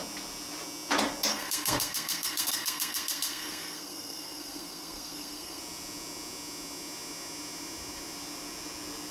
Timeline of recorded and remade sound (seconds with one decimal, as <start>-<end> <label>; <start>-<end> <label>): 0.0-1.3 recorded; 1.3-5.6 remade; 5.6-9.1 recorded